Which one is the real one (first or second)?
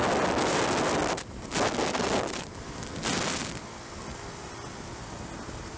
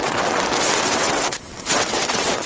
first